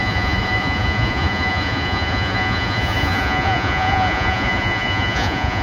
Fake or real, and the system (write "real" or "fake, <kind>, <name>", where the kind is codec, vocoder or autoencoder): fake, vocoder, Vocos